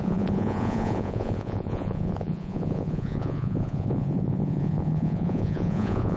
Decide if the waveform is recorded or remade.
remade